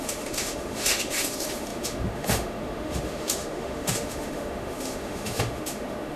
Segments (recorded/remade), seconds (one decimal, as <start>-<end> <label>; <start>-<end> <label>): 0.0-6.2 remade